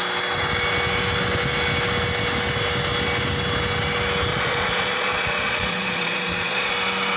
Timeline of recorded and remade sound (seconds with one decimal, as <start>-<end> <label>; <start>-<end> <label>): 0.0-4.3 recorded; 4.3-6.7 remade; 6.7-7.2 recorded